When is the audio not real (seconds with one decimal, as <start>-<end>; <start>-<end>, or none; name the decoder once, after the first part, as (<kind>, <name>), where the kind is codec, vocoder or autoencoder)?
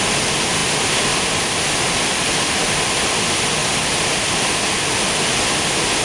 3.6-4.3 (vocoder, BigVGAN v2)